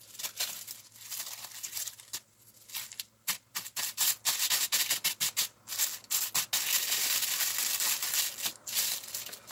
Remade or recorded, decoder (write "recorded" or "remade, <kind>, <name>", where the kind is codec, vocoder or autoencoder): recorded